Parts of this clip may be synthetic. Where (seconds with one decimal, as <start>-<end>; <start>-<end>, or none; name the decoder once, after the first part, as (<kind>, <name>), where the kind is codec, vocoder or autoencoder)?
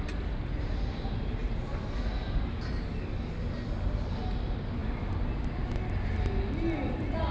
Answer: none